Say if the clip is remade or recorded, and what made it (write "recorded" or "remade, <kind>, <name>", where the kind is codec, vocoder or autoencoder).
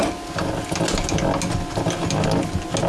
recorded